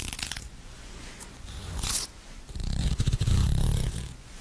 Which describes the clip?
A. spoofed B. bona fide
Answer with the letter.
A